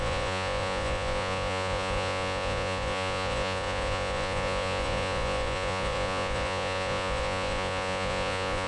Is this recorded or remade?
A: remade